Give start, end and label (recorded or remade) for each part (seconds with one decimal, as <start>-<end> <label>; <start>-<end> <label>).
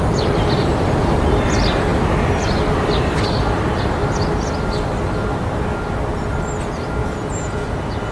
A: 0.0-7.0 recorded; 7.0-8.1 remade